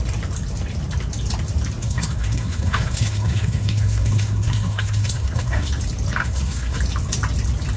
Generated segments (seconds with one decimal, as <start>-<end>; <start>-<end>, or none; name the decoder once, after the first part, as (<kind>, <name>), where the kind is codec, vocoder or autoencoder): 1.8-5.7 (codec, SNAC); 6.2-6.8